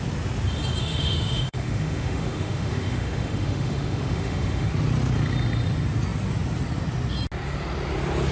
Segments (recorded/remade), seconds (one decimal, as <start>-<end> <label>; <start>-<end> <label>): 0.0-0.8 recorded; 0.8-4.7 remade; 4.7-8.3 recorded